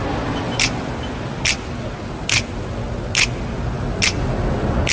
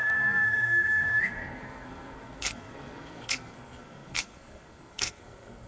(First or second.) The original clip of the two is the first